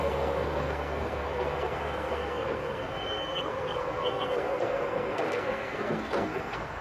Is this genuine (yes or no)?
no